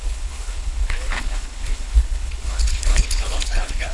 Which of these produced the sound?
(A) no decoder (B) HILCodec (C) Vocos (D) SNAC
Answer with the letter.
B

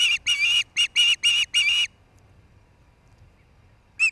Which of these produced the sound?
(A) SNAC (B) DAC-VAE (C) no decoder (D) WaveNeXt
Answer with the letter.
C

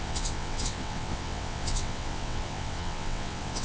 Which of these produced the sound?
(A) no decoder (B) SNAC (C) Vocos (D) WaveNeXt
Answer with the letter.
D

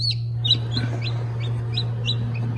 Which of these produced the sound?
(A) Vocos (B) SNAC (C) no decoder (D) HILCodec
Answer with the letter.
C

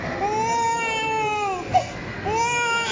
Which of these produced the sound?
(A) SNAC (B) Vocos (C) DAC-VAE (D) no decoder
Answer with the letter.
D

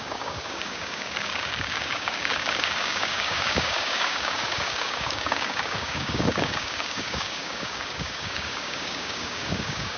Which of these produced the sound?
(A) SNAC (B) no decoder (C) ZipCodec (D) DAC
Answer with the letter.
D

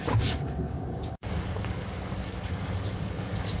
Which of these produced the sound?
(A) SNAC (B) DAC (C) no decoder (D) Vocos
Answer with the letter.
B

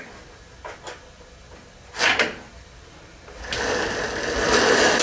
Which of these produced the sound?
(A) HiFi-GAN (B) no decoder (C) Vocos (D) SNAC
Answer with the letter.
B